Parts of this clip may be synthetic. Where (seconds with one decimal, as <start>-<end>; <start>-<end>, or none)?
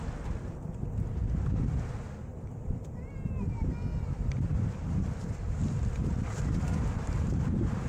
2.2-3.1; 3.9-6.2